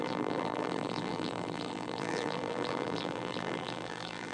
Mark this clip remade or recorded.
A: remade